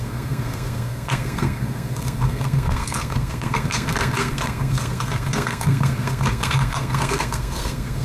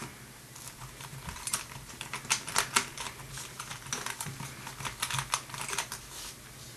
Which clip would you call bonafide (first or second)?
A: second